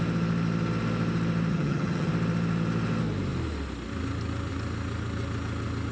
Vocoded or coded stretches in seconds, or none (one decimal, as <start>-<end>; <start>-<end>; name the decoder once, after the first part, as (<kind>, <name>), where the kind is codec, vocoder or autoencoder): 1.5-2.1 (vocoder, HiFi-GAN)